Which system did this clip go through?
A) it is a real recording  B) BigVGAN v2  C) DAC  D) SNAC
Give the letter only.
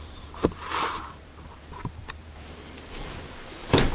B